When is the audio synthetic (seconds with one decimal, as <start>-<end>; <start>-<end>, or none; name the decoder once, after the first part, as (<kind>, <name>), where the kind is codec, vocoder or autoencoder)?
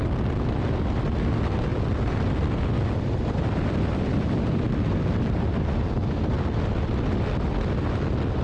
none